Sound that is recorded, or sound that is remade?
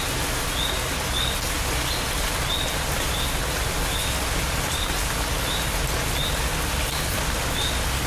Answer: recorded